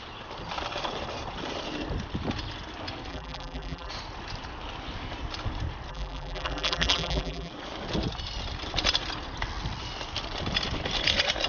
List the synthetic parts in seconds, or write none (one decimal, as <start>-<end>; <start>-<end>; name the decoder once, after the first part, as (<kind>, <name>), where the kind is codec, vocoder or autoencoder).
3.1-3.9 (vocoder, BigVGAN v2); 5.9-7.5